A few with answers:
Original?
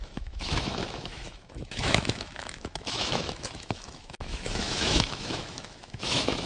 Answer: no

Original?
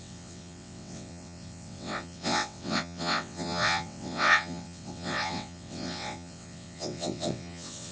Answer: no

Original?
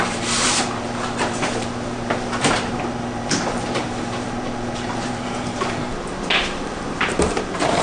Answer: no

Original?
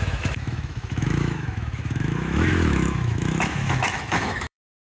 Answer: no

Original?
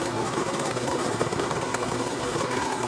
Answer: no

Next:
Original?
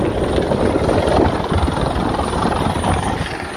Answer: yes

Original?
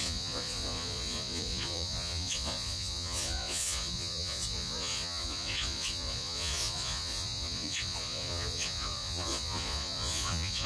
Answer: no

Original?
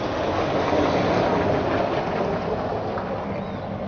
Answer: yes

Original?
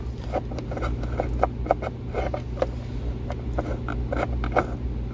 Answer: yes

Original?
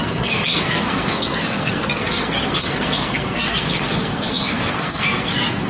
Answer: no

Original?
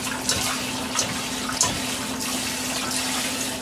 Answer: yes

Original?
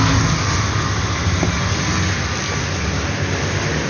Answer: yes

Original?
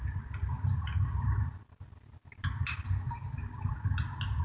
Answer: yes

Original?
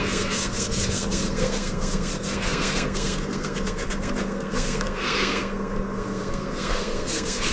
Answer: no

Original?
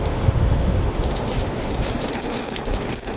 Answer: no